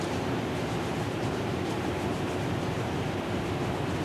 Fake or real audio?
fake